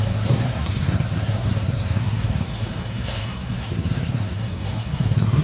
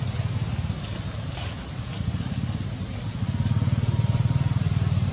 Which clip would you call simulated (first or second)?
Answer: first